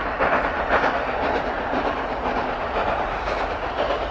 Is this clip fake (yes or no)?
no